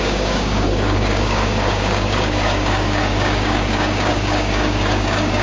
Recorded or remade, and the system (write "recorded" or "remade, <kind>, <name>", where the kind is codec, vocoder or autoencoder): remade, codec, DAC